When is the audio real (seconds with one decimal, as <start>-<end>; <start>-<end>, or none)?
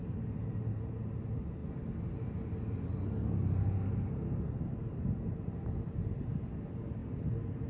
0.0-7.7